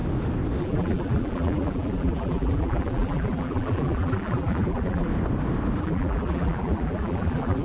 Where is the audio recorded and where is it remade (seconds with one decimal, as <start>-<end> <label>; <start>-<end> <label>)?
0.0-0.6 recorded; 0.6-5.1 remade; 5.1-5.8 recorded; 5.8-7.6 remade